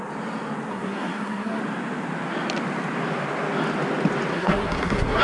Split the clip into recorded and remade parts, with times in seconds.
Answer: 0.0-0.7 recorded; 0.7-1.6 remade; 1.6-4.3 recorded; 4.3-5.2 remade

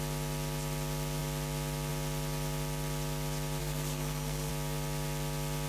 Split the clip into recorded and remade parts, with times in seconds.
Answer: 0.0-3.6 recorded; 3.6-4.5 remade; 4.5-5.7 recorded

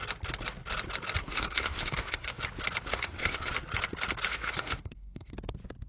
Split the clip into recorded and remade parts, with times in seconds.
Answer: 0.0-1.2 recorded; 1.2-2.3 remade; 2.3-2.9 recorded; 2.9-3.5 remade; 3.5-4.3 recorded; 4.3-5.3 remade; 5.3-5.9 recorded

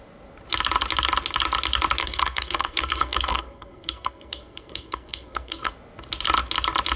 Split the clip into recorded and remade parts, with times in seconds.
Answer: 0.0-2.0 recorded; 2.0-5.7 remade; 5.7-7.0 recorded

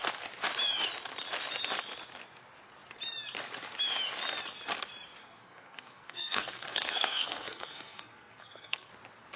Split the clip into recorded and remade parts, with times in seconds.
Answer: 0.0-5.2 recorded; 5.2-8.9 remade; 8.9-9.4 recorded

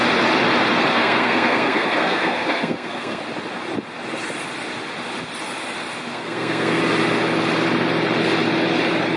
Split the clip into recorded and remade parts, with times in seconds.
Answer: 0.0-0.9 recorded; 0.9-3.2 remade; 3.2-6.1 recorded; 6.1-6.8 remade; 6.8-9.2 recorded

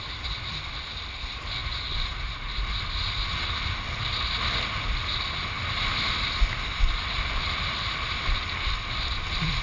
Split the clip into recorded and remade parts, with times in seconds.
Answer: 0.0-9.6 recorded

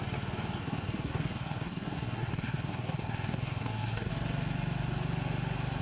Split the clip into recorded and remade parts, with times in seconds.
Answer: 0.0-0.6 recorded; 0.6-4.1 remade; 4.1-5.8 recorded